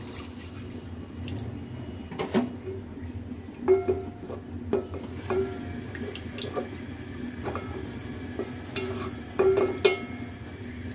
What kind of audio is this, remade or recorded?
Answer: recorded